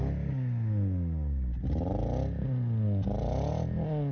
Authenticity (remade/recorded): recorded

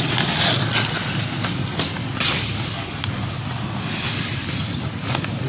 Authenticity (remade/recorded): recorded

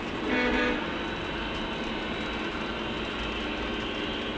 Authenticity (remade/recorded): recorded